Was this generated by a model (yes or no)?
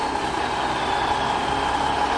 no